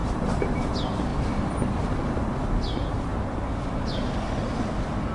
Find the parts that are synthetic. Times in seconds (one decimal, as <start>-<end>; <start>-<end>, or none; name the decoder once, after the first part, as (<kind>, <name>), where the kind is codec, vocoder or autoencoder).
0.0-0.6 (vocoder, BigVGAN v2)